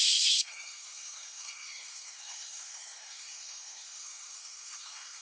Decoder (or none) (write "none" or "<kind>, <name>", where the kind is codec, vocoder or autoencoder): codec, SNAC